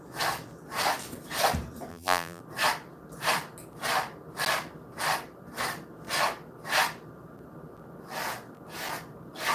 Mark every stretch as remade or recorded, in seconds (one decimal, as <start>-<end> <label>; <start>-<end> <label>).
0.0-1.9 recorded; 1.9-2.4 remade; 2.4-9.5 recorded